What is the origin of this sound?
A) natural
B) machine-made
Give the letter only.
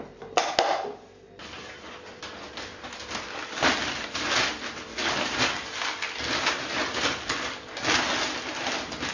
A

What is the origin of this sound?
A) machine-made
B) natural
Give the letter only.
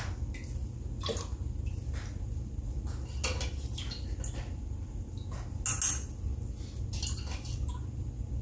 B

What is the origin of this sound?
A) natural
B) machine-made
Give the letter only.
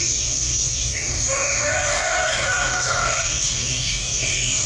B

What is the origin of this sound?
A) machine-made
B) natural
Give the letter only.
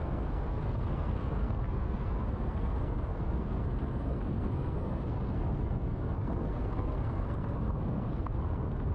A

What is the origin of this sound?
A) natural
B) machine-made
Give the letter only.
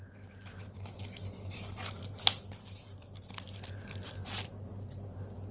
A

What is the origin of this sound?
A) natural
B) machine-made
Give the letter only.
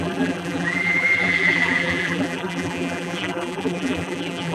B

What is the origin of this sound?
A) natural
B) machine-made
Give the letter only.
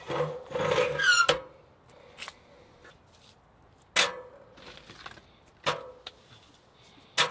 A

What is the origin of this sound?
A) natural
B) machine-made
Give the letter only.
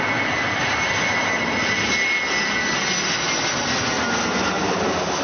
A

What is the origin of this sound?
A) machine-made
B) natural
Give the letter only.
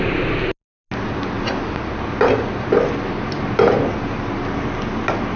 B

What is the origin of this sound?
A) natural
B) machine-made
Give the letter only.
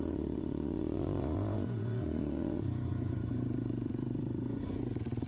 B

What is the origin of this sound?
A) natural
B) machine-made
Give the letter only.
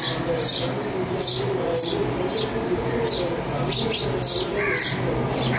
A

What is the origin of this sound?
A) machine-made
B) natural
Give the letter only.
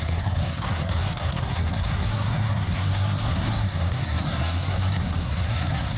A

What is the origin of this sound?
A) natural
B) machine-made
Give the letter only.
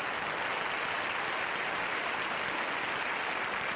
A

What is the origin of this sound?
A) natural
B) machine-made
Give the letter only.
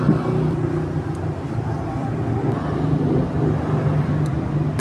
A